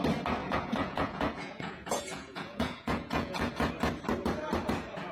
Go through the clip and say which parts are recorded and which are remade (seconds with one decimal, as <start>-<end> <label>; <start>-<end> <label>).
0.0-0.4 recorded; 0.4-3.5 remade; 3.5-5.1 recorded